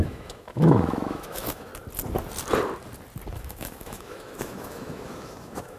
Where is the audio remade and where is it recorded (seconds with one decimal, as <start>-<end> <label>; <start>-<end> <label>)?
0.0-1.7 remade; 1.7-3.4 recorded; 3.4-5.8 remade